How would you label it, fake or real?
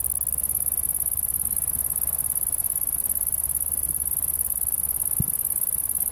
real